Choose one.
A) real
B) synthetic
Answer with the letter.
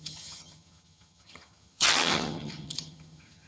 B